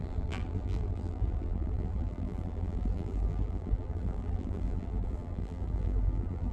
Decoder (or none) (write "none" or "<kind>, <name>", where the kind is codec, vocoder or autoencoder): vocoder, BigVGAN v2